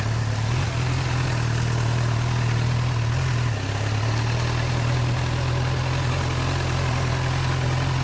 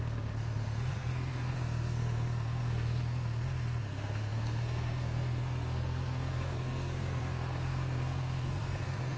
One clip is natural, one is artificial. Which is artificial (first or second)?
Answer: second